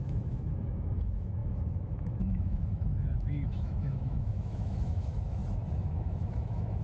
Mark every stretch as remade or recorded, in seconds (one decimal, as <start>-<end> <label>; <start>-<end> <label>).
0.0-5.4 remade; 5.4-5.9 recorded; 5.9-6.8 remade